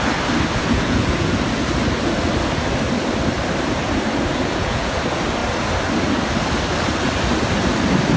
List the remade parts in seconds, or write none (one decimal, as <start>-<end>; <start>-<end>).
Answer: 0.6-1.4; 4.3-5.0